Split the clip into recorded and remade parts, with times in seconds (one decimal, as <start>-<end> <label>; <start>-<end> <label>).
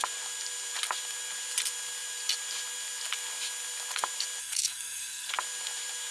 0.0-4.4 recorded; 4.4-5.3 remade; 5.3-6.1 recorded